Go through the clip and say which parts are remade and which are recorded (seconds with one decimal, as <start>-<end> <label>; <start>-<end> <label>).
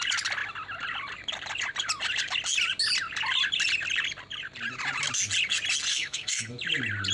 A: 0.0-5.9 recorded; 5.9-6.5 remade; 6.5-7.1 recorded